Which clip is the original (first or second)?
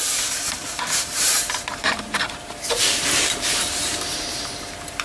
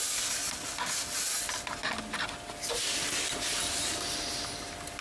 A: second